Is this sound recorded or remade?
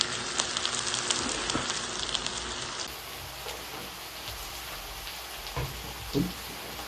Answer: recorded